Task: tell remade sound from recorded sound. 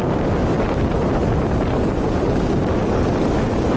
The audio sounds recorded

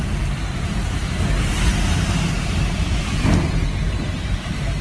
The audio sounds remade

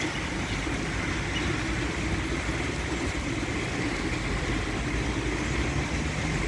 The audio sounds recorded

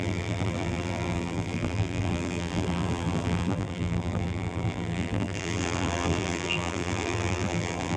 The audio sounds remade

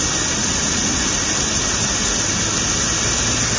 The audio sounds recorded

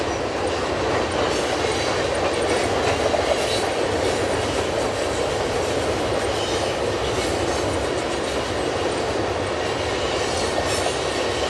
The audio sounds recorded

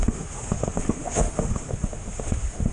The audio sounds remade